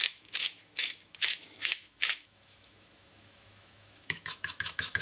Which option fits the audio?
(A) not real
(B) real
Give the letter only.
A